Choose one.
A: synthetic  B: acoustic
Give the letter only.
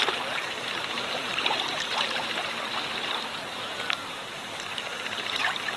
A